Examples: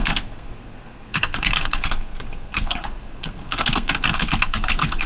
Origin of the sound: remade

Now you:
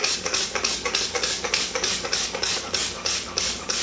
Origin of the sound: remade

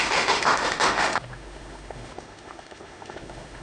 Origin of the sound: remade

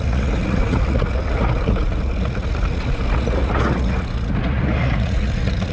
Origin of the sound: remade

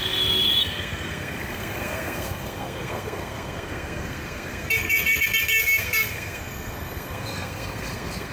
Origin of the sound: remade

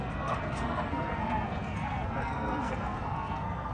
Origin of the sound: remade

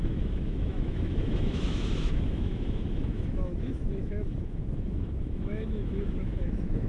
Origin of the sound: remade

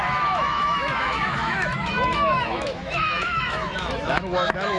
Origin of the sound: remade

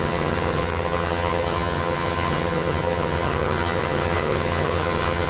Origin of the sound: remade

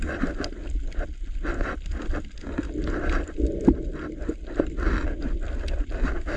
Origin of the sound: recorded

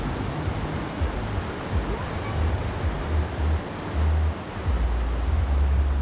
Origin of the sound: recorded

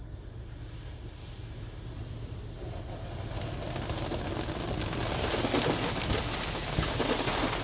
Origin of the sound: recorded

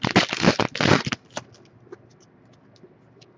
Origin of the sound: recorded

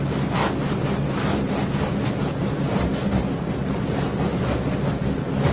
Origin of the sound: recorded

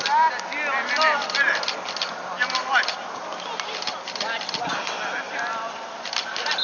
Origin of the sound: recorded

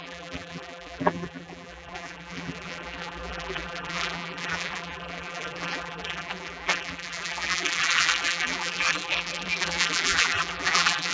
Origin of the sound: remade